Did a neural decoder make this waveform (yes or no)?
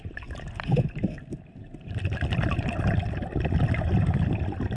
no